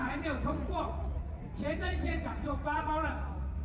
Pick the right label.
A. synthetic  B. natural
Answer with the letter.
A